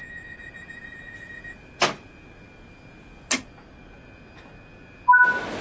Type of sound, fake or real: real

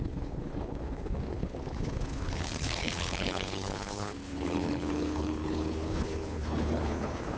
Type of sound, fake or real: fake